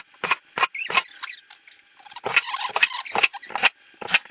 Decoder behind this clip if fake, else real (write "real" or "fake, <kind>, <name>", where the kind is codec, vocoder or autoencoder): real